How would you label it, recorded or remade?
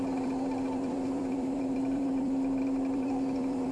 remade